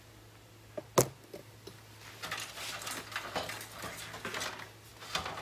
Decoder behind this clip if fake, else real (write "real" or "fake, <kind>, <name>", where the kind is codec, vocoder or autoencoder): real